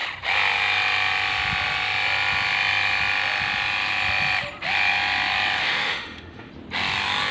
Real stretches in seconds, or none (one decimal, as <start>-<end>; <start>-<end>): 0.0-5.6; 6.5-7.3